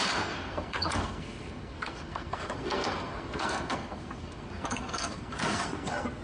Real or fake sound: fake